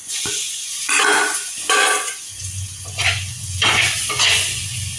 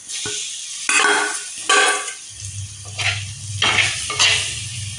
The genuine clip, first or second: second